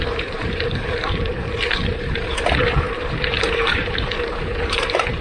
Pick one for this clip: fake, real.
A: fake